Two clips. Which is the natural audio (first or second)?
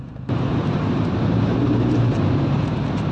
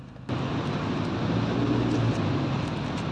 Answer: second